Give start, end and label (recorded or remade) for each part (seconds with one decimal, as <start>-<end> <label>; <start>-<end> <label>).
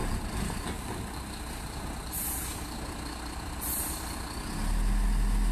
0.0-2.1 remade; 2.1-5.5 recorded